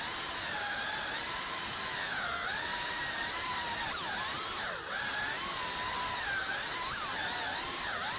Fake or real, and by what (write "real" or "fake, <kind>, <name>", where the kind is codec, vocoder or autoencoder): real